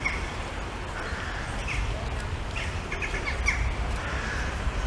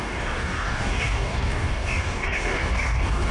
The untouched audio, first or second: first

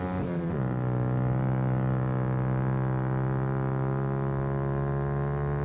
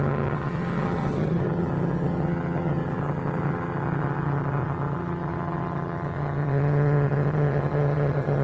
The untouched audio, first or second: first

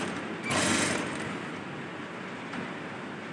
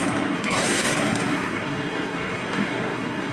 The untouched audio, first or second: first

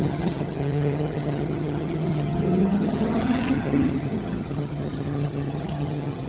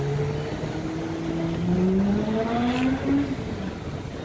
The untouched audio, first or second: second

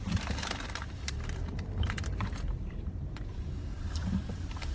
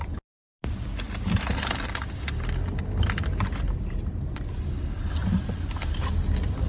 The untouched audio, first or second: second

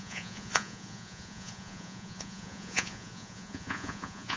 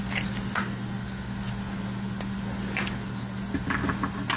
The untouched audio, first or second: second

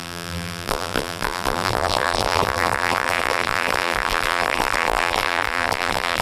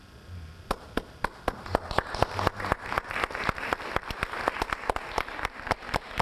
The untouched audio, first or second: second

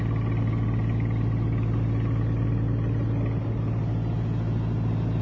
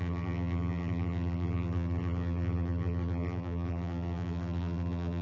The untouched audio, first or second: first